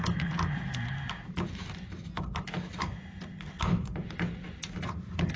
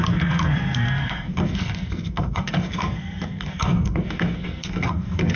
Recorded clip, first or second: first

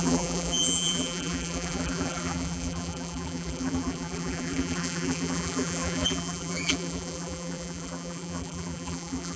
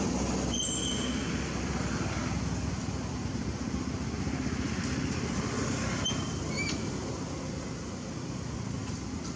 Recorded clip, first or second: second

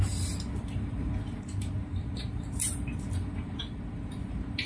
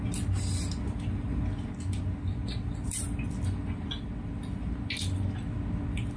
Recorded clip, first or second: second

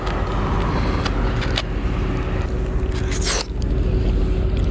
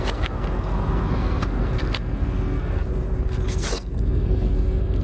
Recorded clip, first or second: first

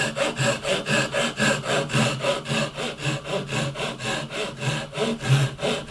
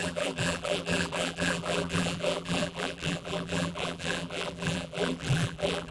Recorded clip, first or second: first